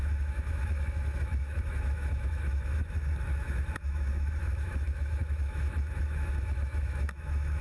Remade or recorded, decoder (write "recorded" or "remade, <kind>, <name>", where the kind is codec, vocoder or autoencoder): remade, autoencoder, DAC-VAE